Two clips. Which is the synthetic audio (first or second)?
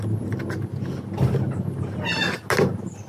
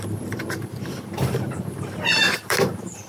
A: second